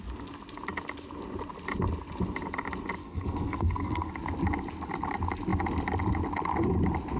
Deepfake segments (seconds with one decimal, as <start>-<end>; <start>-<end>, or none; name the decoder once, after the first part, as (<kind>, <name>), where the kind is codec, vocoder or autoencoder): 3.0-4.1 (codec, SNAC)